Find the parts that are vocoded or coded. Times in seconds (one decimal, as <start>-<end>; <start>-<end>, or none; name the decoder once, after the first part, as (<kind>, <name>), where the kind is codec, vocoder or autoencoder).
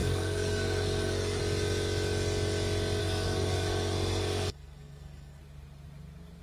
0.0-1.4 (codec, SNAC); 3.0-5.4